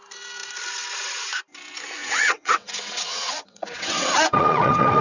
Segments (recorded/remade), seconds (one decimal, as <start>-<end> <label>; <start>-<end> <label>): 0.0-2.0 recorded; 2.0-5.0 remade